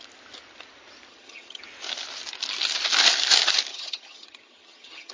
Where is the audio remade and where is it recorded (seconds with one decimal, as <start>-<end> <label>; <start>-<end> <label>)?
0.0-1.1 recorded; 1.1-1.6 remade; 1.6-3.7 recorded; 3.7-5.1 remade